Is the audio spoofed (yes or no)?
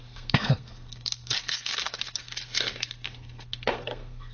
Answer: yes